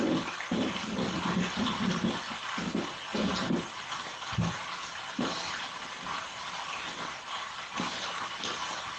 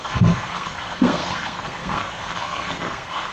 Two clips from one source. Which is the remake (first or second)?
second